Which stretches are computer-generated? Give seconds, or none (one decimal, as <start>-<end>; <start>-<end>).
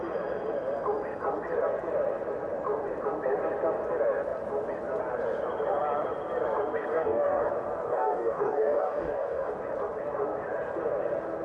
6.9-7.5; 7.9-9.5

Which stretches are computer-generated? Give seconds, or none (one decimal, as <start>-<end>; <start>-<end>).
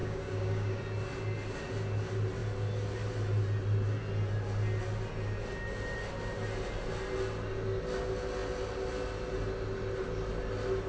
0.0-0.8